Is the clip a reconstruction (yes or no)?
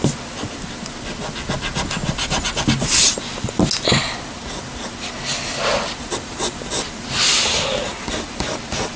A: no